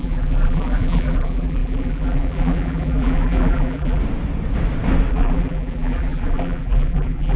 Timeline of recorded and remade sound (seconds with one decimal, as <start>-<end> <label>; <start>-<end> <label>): 0.0-4.0 remade; 4.0-5.1 recorded; 5.1-7.4 remade